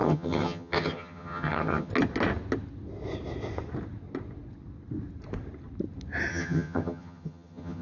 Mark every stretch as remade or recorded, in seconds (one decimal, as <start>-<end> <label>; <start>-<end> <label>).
0.0-1.9 remade; 1.9-6.3 recorded; 6.3-7.8 remade